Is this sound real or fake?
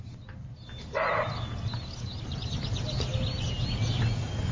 real